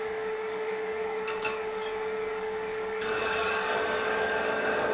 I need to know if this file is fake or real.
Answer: fake